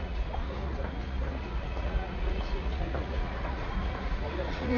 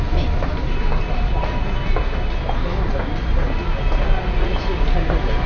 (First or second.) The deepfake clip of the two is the first